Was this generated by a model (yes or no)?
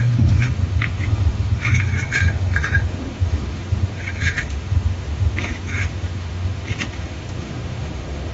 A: yes